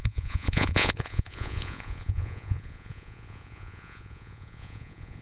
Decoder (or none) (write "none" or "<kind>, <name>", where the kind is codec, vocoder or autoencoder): vocoder, Vocos